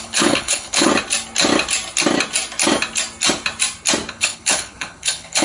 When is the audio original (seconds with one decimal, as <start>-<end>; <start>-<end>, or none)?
0.9-4.1